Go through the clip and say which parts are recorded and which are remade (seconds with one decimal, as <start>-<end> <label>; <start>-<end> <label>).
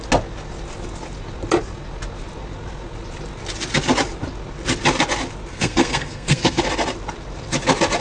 0.0-5.5 recorded; 5.5-6.6 remade; 6.6-8.0 recorded